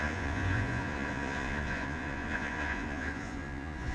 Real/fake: fake